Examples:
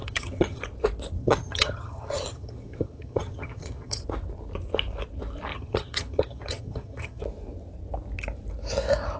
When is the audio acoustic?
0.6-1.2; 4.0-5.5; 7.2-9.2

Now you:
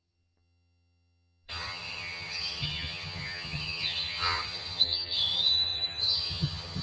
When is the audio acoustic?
none